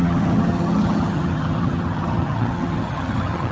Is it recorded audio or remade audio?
remade